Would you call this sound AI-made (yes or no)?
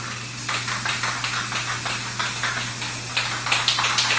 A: no